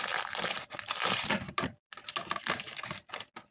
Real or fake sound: real